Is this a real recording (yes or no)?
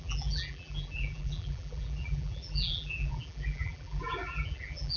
no